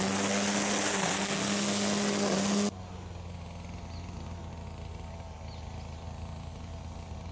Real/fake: real